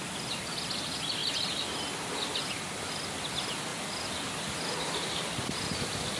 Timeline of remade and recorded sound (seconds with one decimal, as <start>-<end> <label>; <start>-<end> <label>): 0.0-6.2 recorded